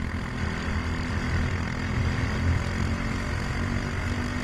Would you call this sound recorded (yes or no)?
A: yes